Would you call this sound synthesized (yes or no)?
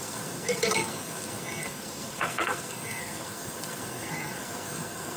yes